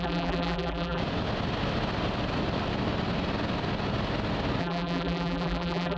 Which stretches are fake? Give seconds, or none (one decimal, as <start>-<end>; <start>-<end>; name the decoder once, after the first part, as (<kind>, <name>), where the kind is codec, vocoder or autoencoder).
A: 0.0-1.0 (vocoder, BigVGAN v2); 4.6-6.0